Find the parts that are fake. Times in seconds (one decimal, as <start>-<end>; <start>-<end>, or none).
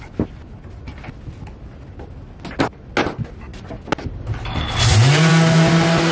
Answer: none